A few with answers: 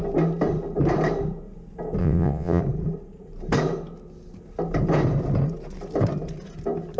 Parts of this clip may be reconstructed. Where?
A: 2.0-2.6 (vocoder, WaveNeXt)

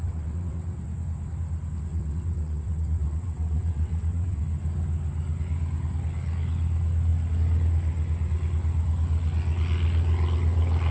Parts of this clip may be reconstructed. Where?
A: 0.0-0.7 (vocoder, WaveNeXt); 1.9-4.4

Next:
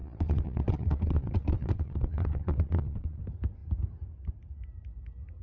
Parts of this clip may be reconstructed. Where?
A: 0.0-3.2 (vocoder, WaveNeXt)

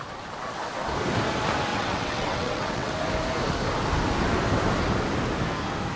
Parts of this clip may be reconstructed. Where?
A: 1.7-2.9 (vocoder, WaveNeXt)